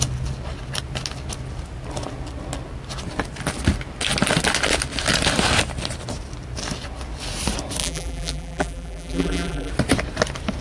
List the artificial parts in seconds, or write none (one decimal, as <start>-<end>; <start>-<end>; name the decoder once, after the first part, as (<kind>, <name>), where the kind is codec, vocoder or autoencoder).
7.8-9.7 (vocoder, BigVGAN v2)